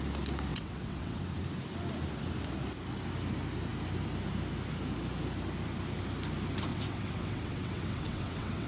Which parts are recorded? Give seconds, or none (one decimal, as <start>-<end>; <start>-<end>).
0.0-0.5; 1.2-6.7

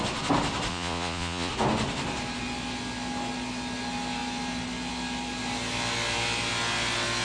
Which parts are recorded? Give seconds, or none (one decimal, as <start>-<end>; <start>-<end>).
0.0-0.7; 1.5-7.2

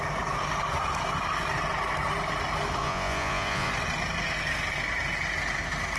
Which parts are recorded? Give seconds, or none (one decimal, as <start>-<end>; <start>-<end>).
0.0-2.8; 3.7-6.0

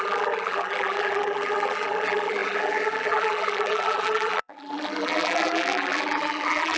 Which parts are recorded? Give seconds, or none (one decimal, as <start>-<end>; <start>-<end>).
none

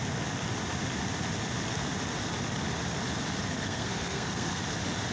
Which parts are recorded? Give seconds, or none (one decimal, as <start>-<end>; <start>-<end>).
0.0-3.4; 4.6-5.1

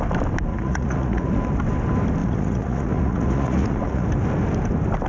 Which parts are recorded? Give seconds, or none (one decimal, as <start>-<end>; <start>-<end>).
0.0-0.5; 1.3-2.2; 4.1-5.1

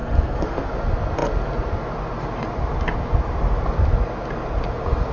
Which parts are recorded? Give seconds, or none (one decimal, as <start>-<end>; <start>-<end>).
0.7-5.1